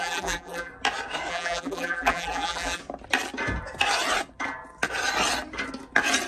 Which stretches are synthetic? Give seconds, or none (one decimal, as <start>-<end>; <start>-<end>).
0.0-0.7; 1.3-2.8